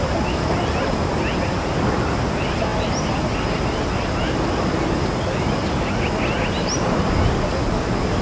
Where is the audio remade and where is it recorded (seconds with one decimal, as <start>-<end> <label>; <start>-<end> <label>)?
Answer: 0.0-8.2 recorded